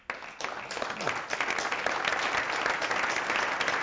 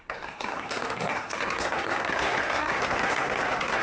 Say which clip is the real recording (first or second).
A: first